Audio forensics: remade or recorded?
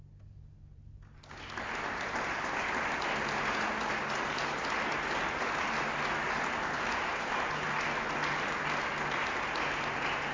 recorded